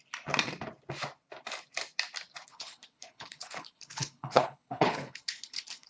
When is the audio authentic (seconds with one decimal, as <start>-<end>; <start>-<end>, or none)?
0.0-2.5